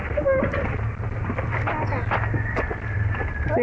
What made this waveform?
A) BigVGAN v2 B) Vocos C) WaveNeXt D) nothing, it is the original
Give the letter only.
D